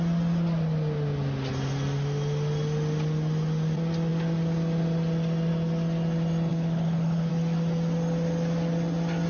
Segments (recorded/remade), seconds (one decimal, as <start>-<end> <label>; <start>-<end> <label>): 0.0-6.5 recorded; 6.5-7.3 remade; 7.3-9.3 recorded